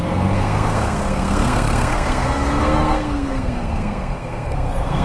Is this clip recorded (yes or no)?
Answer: no